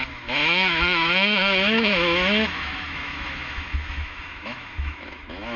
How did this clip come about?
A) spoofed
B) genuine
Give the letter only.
A